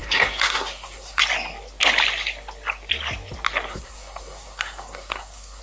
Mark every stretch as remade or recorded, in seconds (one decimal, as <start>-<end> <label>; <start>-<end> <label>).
0.0-1.2 remade; 1.2-3.7 recorded; 3.7-5.6 remade